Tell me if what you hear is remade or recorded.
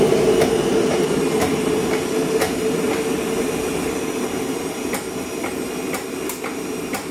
recorded